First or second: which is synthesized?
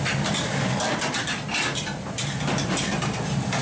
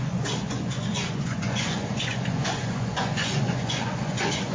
second